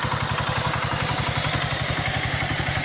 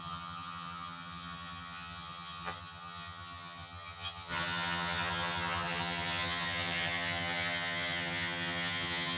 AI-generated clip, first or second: second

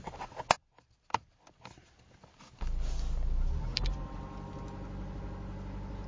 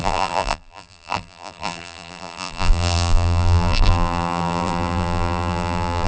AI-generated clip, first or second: second